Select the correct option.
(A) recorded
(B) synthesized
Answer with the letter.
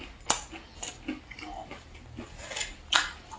A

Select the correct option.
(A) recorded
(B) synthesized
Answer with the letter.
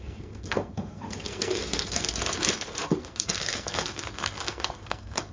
B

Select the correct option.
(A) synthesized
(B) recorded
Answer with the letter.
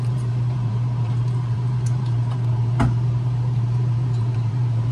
A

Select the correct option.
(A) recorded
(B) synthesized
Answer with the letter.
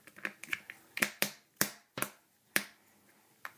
A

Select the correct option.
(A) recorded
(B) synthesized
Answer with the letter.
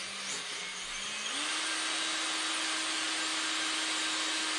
A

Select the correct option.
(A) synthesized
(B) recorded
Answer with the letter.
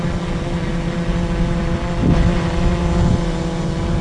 B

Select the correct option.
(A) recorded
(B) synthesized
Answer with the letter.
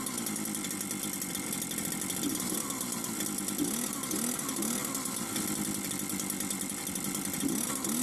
A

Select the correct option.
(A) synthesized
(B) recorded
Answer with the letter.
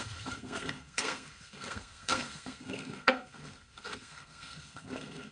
A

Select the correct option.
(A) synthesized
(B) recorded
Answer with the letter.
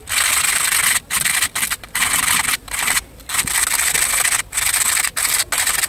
B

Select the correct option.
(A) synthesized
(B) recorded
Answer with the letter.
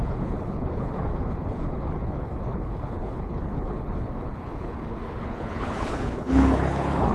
A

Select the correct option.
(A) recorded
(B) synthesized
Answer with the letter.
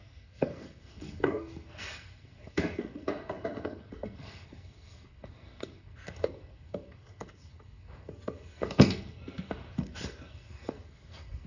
B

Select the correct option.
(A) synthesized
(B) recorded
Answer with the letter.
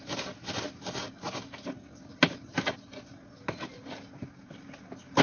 B